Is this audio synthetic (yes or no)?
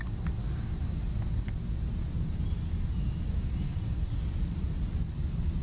no